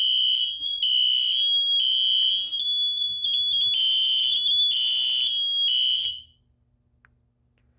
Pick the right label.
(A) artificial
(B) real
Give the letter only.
B